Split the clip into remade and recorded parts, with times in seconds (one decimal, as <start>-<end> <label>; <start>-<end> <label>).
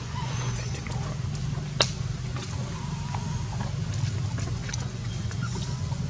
0.0-0.8 remade; 0.8-4.5 recorded; 4.5-6.1 remade